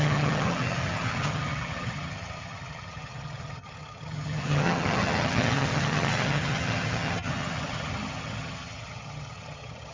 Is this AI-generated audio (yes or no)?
yes